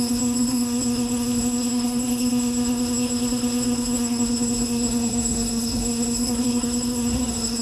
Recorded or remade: remade